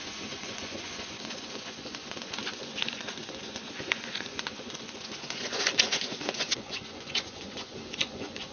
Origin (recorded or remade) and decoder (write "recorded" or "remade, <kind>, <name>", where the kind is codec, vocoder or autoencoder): remade, vocoder, Vocos